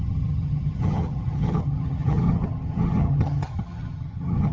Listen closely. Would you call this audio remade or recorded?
remade